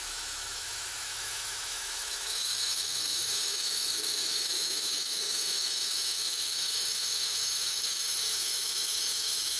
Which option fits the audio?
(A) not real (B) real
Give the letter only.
A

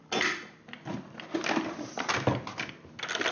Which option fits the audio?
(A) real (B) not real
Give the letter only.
A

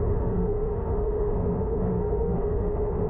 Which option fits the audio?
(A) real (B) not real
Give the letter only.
B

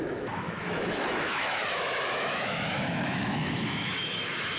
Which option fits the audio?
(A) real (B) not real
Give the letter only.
B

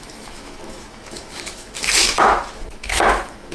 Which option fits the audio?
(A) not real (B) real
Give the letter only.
A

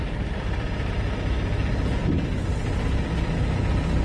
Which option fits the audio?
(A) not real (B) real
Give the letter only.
B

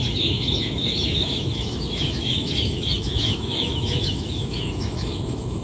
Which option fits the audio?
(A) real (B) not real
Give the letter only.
B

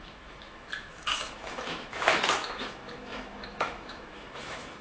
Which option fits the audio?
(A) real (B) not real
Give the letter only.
B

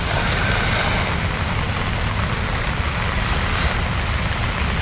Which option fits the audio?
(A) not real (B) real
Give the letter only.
B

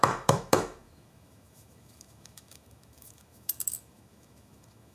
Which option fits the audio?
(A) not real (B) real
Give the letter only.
A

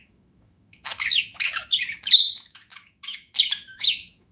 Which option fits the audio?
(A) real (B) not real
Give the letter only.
B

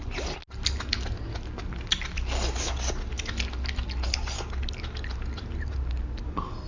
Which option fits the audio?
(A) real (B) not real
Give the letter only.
A